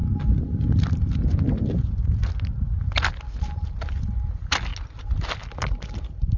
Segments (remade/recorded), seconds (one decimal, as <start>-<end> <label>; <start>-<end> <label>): 0.0-6.4 recorded